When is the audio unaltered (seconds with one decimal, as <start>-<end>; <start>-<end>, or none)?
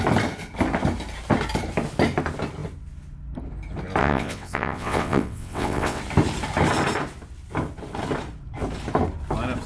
0.0-4.0; 6.0-9.7